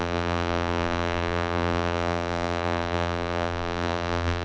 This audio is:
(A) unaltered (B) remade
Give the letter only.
B